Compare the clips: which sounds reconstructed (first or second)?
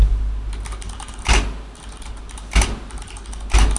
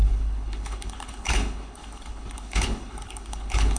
second